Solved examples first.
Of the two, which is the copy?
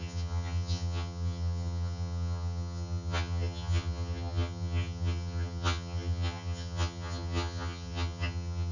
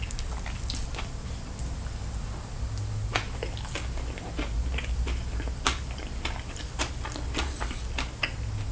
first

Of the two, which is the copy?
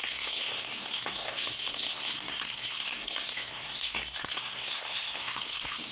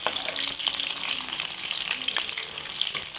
first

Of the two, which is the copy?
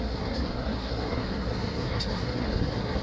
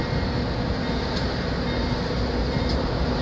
first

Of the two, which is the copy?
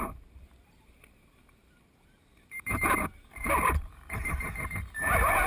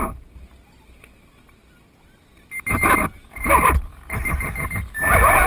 first